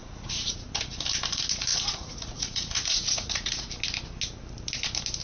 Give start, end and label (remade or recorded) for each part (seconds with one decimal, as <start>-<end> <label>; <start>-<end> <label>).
0.0-0.7 remade; 0.7-1.7 recorded; 1.7-3.7 remade; 3.7-5.2 recorded

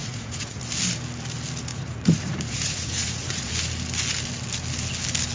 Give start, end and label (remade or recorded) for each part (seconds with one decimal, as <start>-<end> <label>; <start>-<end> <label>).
0.0-0.6 remade; 0.6-1.7 recorded; 1.7-3.5 remade; 3.5-5.3 recorded

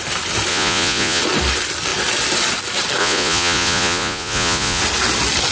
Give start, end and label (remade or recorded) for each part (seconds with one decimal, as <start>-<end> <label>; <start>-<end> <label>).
0.0-0.5 recorded; 0.5-1.2 remade; 1.2-3.0 recorded; 3.0-4.8 remade; 4.8-5.5 recorded

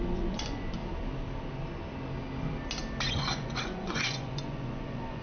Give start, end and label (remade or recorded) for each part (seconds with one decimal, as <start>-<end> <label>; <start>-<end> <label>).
0.0-0.8 remade; 0.8-3.1 recorded; 3.1-5.2 remade

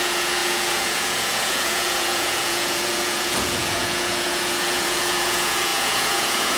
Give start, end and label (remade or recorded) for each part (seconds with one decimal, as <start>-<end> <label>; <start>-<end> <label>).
0.0-6.6 remade

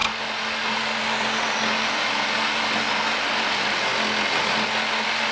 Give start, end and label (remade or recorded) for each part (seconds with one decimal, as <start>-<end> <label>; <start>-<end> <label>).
0.0-5.3 recorded

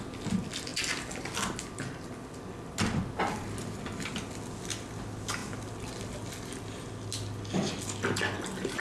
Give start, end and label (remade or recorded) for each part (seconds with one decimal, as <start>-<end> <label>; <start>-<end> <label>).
0.0-8.8 recorded

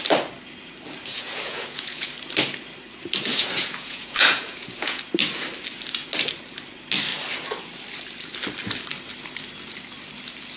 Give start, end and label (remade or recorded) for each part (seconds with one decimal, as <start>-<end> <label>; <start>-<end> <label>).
0.0-1.1 recorded; 1.1-2.1 remade; 2.1-3.3 recorded; 3.3-5.0 remade; 5.0-10.6 recorded